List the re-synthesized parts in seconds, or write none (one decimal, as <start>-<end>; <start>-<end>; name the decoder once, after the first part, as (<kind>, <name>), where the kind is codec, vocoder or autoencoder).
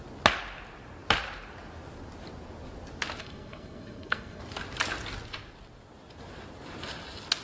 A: 3.2-4.4 (codec, SNAC)